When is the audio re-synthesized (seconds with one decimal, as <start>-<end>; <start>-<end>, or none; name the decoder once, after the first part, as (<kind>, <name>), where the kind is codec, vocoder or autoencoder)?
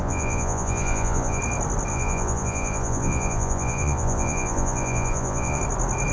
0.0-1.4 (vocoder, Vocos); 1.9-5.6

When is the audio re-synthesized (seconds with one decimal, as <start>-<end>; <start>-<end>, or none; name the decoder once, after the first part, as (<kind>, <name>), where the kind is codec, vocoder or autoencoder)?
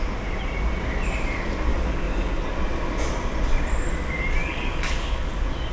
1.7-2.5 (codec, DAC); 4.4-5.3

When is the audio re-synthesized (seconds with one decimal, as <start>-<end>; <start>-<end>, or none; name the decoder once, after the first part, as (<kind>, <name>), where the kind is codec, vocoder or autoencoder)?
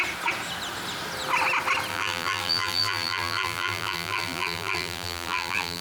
1.9-5.8 (vocoder, BigVGAN v2)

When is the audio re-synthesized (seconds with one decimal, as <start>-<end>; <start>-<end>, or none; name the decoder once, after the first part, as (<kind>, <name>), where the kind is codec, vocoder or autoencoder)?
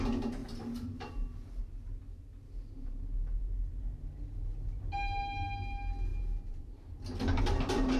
0.4-1.6 (vocoder, BigVGAN v2); 6.1-6.9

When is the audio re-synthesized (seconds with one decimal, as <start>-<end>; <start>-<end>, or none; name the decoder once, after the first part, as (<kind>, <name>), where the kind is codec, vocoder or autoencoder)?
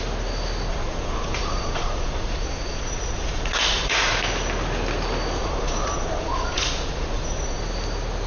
0.7-4.1 (vocoder, Vocos); 5.4-7.6